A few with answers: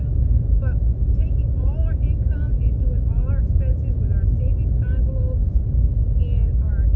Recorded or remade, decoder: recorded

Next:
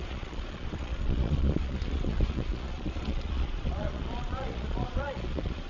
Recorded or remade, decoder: remade, vocoder, Vocos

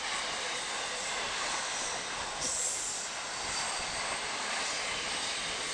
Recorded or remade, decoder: recorded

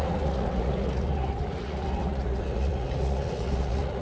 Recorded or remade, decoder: remade, vocoder, Vocos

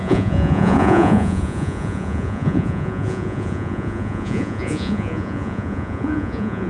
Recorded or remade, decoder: remade, vocoder, Vocos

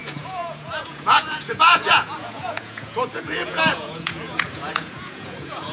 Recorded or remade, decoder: remade, vocoder, Vocos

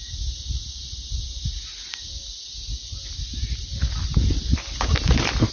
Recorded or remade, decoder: recorded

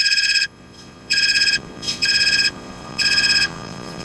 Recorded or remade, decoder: remade, vocoder, Vocos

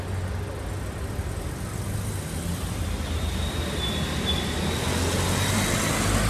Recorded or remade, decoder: recorded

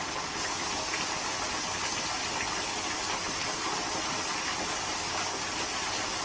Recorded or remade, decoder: recorded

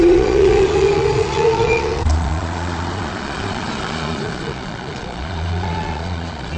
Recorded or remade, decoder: remade, vocoder, Vocos